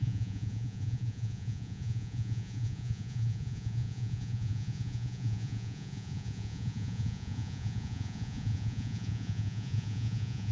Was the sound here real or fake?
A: fake